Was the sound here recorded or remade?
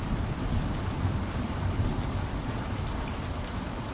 remade